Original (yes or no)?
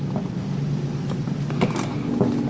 yes